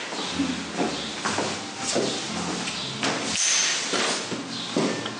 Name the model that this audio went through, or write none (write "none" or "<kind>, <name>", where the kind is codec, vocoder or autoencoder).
none